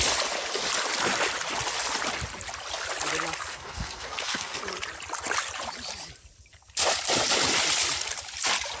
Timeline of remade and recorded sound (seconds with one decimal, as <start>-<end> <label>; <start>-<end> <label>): 0.0-3.5 recorded; 3.5-4.6 remade; 4.6-8.8 recorded